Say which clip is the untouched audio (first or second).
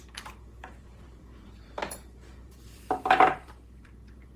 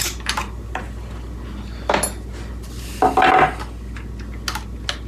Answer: second